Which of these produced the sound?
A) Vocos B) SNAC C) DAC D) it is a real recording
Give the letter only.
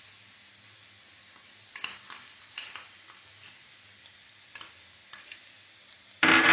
D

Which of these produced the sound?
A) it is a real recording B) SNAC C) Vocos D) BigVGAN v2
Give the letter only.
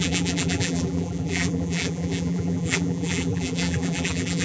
D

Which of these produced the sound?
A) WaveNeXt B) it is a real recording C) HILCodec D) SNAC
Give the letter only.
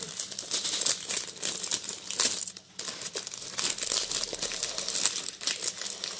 B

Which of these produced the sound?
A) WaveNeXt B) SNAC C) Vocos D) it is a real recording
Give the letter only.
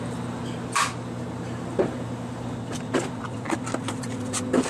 D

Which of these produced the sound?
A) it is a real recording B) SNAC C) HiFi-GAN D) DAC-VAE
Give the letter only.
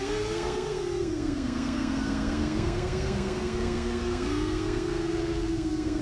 B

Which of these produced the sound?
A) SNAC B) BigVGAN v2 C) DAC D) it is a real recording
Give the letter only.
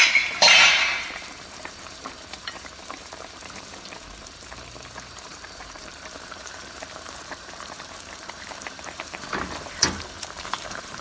B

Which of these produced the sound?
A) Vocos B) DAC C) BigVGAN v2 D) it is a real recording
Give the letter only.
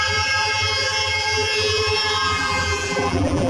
C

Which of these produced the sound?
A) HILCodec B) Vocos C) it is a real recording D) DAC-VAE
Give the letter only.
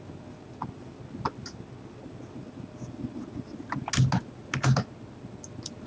C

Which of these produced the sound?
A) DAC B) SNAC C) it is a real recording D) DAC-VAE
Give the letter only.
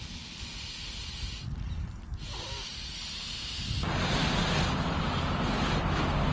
C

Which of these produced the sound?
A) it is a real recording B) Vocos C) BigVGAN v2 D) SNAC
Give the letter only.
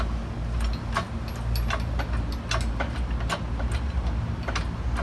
A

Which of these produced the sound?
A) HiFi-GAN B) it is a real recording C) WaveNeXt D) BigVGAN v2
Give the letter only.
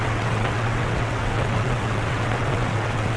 C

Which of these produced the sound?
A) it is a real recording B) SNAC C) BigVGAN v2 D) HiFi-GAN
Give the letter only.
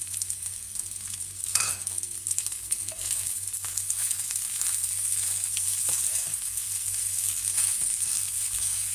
B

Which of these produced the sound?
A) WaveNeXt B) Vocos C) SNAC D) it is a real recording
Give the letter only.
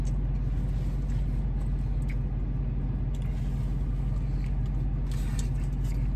D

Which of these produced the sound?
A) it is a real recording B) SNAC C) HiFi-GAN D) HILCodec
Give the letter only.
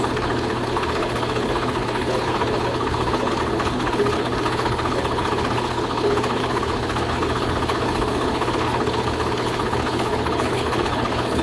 D